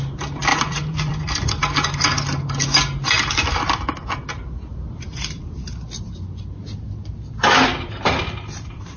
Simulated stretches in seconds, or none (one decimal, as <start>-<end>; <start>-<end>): 0.5-1.5; 3.0-4.9; 7.7-9.0